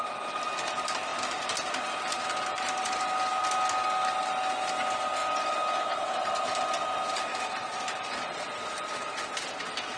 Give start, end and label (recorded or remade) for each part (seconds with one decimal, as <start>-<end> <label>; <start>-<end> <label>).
0.0-7.3 recorded; 7.3-10.0 remade